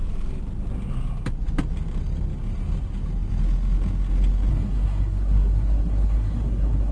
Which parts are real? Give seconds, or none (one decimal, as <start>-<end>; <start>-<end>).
0.0-4.5